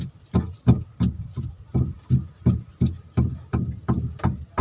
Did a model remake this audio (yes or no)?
no